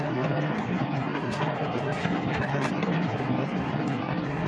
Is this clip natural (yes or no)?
no